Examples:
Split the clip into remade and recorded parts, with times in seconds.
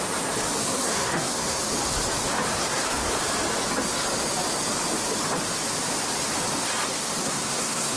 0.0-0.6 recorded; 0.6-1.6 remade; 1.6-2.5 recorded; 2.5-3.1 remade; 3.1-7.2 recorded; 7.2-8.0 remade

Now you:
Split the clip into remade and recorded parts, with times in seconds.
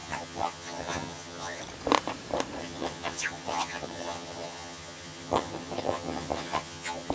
0.0-1.6 remade; 1.6-2.6 recorded; 2.6-7.1 remade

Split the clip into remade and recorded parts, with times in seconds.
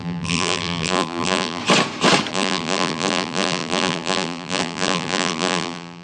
0.0-1.6 remade; 1.6-2.3 recorded; 2.3-6.0 remade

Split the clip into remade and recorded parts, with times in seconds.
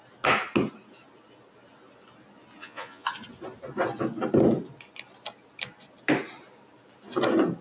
0.0-2.6 recorded; 2.6-3.1 remade; 3.1-7.6 recorded